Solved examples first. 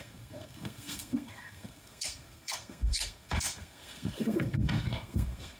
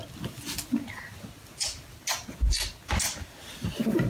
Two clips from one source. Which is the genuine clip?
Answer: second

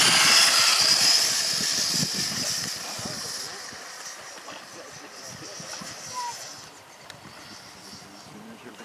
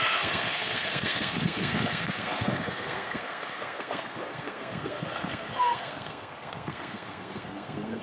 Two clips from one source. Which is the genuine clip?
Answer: first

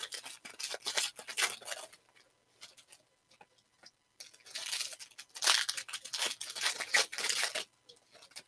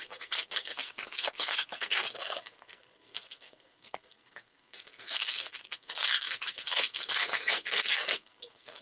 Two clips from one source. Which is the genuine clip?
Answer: first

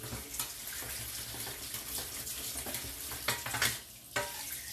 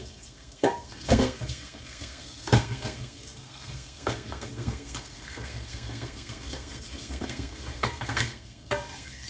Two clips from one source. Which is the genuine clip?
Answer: first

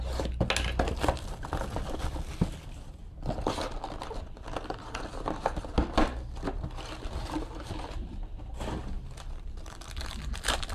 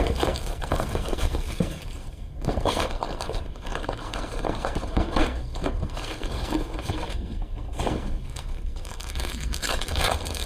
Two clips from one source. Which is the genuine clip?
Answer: first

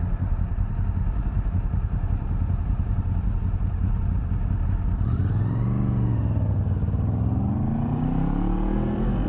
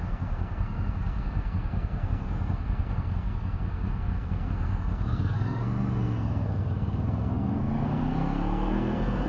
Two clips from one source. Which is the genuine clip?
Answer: first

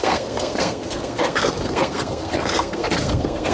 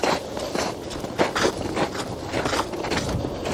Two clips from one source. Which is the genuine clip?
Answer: second